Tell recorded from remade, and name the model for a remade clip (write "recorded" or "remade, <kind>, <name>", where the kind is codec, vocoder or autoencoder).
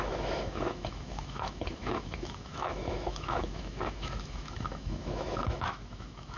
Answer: remade, autoencoder, DAC-VAE